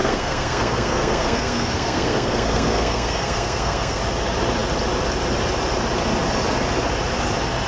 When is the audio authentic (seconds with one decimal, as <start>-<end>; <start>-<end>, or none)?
4.0-7.7